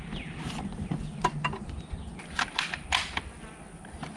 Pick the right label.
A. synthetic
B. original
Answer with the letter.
B